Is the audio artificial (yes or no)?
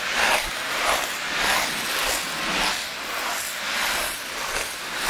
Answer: no